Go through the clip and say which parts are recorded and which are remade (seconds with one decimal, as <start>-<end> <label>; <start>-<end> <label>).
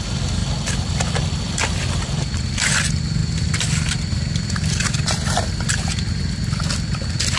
0.0-7.4 recorded